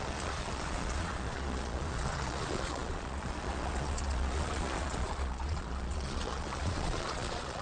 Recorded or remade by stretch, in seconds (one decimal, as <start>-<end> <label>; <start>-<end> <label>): 0.0-7.6 remade